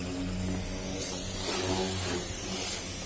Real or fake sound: real